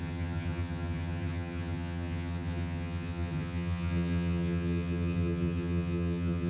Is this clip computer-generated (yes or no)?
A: yes